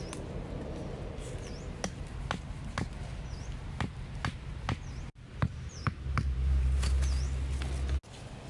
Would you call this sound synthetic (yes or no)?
no